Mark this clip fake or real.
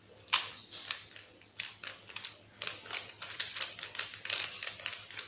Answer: real